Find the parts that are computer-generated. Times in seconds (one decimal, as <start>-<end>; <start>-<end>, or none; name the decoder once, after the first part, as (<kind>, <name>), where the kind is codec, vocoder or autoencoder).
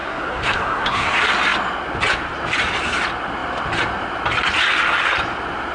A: 0.0-1.1 (codec, SNAC)